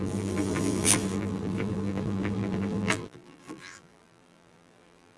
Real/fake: fake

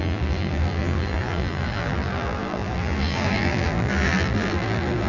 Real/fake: fake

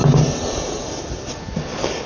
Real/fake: real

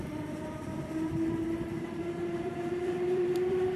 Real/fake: fake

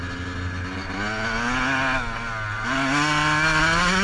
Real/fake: real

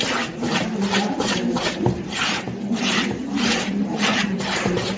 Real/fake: fake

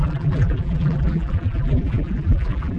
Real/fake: fake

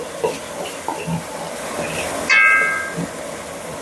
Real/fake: real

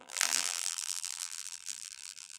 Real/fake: fake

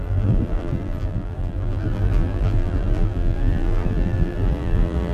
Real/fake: fake